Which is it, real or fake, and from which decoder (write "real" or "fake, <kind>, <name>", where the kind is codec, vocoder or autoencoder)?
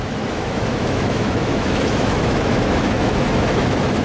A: fake, autoencoder, DAC-VAE